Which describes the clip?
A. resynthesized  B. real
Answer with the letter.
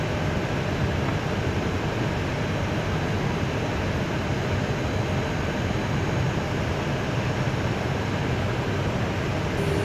B